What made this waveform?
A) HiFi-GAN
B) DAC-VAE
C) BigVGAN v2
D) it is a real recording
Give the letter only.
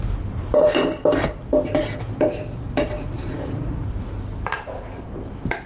C